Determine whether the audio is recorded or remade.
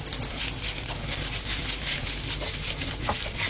recorded